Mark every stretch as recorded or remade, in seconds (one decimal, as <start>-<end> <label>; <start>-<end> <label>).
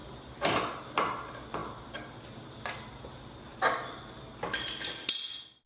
0.0-0.7 remade; 0.7-1.6 recorded; 1.6-2.1 remade; 2.1-3.5 recorded; 3.5-4.2 remade; 4.2-5.7 recorded